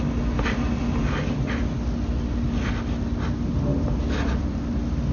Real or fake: real